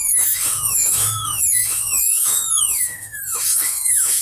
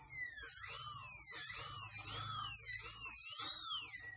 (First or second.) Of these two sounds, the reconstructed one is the first